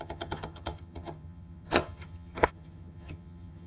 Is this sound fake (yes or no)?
yes